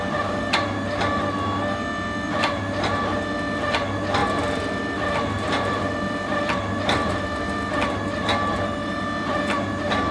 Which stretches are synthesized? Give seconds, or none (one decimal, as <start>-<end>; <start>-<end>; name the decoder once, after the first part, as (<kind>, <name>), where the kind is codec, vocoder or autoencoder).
4.2-7.7 (vocoder, BigVGAN v2)

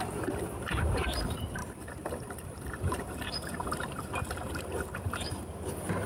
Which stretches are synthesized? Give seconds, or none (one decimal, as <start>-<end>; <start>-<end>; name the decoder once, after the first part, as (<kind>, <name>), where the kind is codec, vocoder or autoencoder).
1.6-5.3 (vocoder, BigVGAN v2)

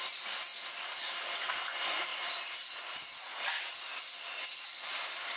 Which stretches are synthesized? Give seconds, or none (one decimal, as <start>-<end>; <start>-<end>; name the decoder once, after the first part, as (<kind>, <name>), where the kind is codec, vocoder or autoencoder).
0.5-1.5 (vocoder, BigVGAN v2); 2.1-2.7

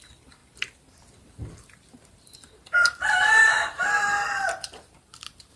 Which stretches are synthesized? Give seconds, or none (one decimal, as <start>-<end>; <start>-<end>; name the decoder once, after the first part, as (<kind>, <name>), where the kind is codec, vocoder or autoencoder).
0.0-5.6 (vocoder, BigVGAN v2)

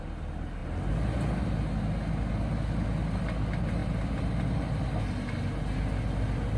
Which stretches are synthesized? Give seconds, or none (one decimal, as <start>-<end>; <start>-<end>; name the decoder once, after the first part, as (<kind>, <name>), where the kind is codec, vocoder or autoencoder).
3.8-5.0 (vocoder, BigVGAN v2)

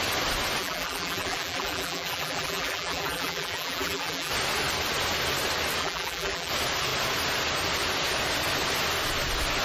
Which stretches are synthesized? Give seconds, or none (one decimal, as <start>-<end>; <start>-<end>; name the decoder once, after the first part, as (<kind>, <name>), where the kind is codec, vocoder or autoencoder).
0.6-4.3 (vocoder, BigVGAN v2); 5.8-6.5

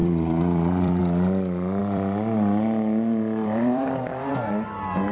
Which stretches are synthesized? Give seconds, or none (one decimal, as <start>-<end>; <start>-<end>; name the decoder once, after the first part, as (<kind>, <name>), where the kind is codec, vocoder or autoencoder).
0.0-1.0 (vocoder, BigVGAN v2); 1.8-4.3

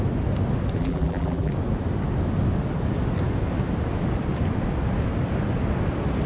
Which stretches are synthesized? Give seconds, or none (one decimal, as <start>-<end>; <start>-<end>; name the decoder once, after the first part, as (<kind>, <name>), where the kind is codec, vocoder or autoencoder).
0.8-1.5 (vocoder, BigVGAN v2)